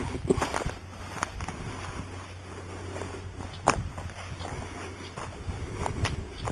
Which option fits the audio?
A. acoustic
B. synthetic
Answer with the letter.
A